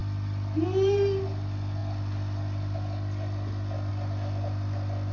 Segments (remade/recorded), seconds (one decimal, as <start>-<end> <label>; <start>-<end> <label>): 0.0-5.1 recorded